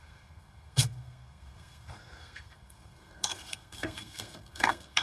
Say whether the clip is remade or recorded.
remade